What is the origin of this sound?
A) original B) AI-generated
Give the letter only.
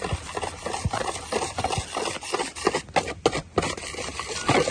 A